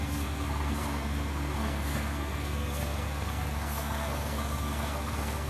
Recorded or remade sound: remade